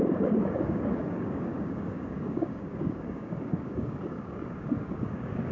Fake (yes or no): yes